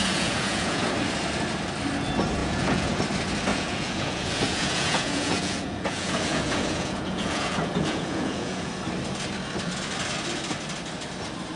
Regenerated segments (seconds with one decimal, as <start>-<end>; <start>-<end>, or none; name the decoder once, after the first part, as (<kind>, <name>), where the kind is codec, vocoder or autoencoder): 0.0-0.9 (vocoder, Vocos); 2.4-3.0; 3.5-8.7